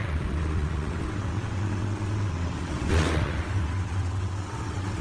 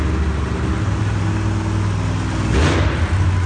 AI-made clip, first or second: first